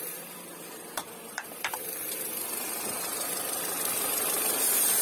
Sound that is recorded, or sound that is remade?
remade